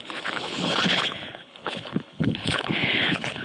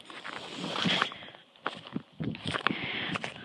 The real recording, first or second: second